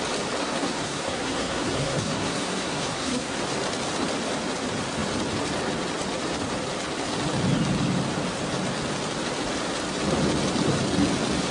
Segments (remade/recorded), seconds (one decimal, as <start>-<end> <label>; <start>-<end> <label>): 0.0-0.4 recorded; 0.4-3.4 remade; 3.4-11.5 recorded